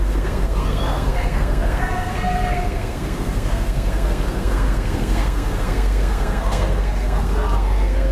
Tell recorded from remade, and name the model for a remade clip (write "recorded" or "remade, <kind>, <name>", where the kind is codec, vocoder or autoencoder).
remade, codec, SNAC